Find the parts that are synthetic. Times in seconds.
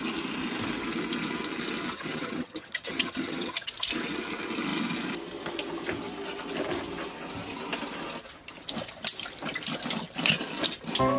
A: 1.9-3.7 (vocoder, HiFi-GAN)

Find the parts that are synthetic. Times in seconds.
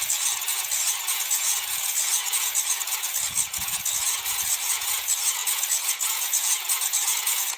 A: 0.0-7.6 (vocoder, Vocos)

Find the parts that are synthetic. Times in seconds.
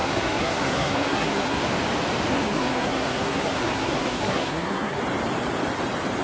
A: 0.0-1.6 (codec, SNAC); 2.3-5.0